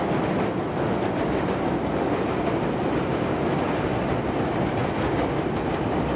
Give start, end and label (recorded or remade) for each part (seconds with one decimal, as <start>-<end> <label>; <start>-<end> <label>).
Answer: 0.0-6.2 recorded